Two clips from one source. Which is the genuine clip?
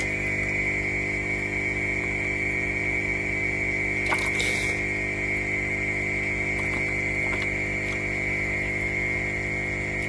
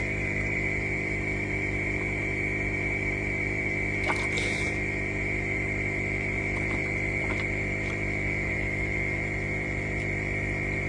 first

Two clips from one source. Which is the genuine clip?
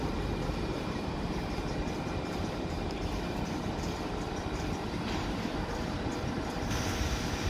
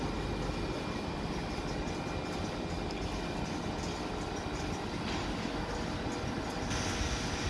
second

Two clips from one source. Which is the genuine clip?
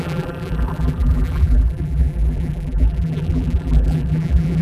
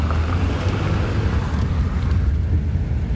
second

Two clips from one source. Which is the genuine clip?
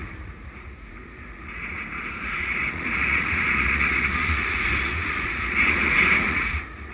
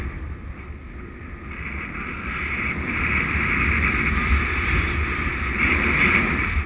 second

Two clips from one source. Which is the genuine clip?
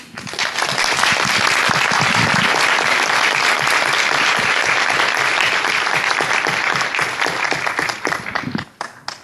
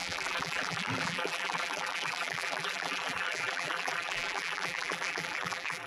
first